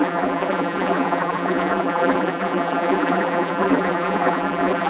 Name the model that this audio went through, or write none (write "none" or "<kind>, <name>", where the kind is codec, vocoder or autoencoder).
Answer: vocoder, BigVGAN v2